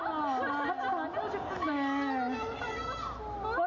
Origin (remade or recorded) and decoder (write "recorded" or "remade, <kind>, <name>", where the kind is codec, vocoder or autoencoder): recorded